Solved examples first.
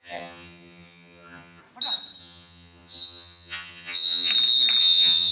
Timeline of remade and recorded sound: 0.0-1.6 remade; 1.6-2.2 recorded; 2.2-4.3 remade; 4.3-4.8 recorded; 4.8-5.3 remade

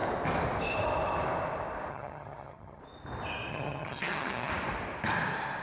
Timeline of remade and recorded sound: 0.0-1.9 recorded; 1.9-2.8 remade; 2.8-3.5 recorded; 3.5-4.5 remade; 4.5-5.6 recorded

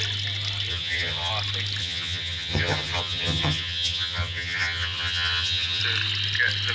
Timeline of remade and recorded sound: 0.0-0.7 recorded; 0.7-1.3 remade; 1.3-1.8 recorded; 1.8-5.8 remade; 5.8-6.7 recorded

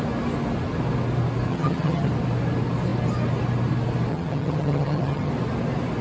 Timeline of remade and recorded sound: 0.0-1.5 recorded; 1.5-2.1 remade; 2.1-4.1 recorded; 4.1-5.3 remade; 5.3-6.0 recorded

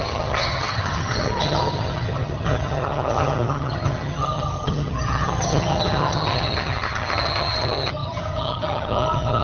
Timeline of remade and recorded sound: 0.0-9.4 remade

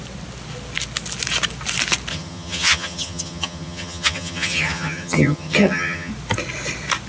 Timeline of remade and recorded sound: 0.0-2.1 recorded; 2.1-6.1 remade; 6.1-7.1 recorded

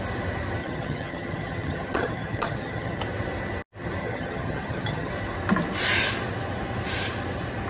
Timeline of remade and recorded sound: 0.0-0.6 recorded; 0.6-3.0 remade; 3.0-4.0 recorded; 4.0-5.1 remade; 5.1-7.7 recorded

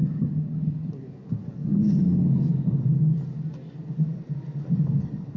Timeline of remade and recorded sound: 0.0-0.9 remade; 0.9-5.4 recorded